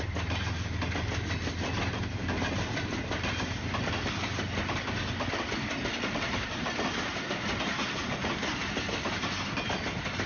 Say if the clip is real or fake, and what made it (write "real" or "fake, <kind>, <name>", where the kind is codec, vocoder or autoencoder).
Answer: real